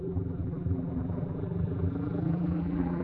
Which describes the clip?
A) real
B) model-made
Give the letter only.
B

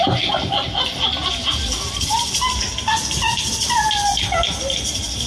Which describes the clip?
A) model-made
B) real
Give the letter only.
B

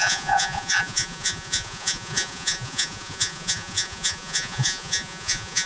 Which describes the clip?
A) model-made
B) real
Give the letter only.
A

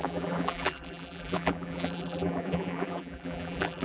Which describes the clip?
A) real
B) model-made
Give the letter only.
B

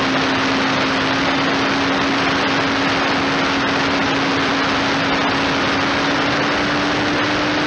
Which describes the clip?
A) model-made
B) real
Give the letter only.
B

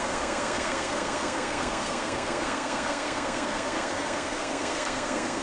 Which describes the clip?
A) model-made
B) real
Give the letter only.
A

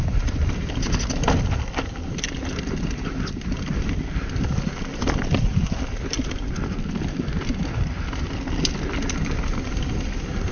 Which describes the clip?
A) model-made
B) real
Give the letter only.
B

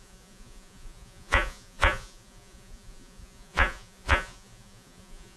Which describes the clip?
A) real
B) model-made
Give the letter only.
B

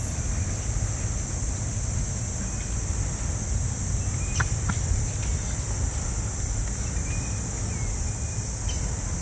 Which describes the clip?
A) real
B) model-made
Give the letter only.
A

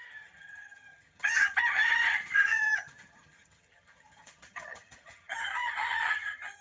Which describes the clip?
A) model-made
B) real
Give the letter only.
A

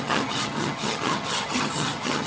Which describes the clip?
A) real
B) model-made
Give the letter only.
B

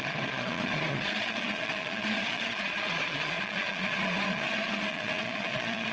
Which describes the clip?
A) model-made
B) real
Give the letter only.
A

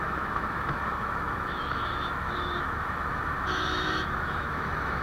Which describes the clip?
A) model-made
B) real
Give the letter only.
A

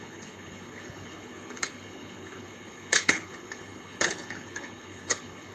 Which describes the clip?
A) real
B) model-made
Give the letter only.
B